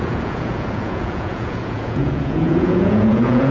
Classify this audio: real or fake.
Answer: fake